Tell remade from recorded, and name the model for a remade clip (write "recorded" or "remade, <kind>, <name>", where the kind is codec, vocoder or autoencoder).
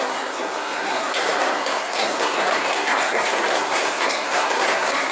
remade, codec, SNAC